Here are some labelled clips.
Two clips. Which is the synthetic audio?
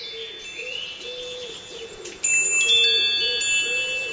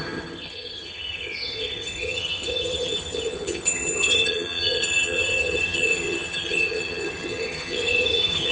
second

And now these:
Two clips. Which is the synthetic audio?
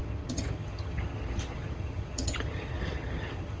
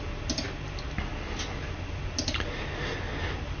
first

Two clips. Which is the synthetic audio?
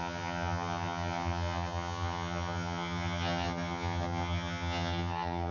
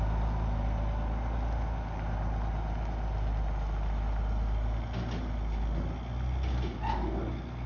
first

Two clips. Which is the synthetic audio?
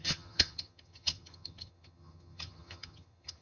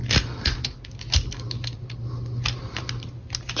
first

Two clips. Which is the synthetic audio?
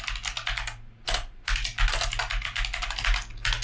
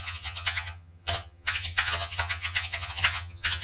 second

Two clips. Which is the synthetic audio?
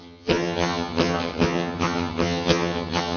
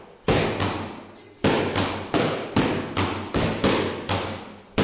first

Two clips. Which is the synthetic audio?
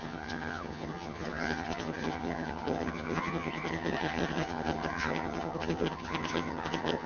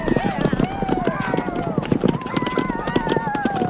first